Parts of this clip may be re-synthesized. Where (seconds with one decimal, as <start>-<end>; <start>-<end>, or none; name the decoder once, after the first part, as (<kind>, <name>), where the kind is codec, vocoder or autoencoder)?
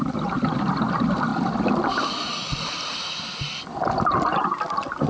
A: none